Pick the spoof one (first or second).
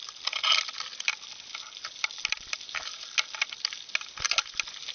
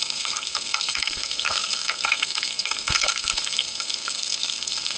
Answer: second